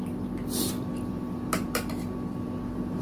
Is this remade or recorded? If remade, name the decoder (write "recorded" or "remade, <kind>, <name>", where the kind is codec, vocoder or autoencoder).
remade, vocoder, BigVGAN v2